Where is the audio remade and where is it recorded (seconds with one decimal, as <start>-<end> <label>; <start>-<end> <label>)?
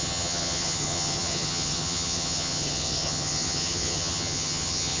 0.0-5.0 remade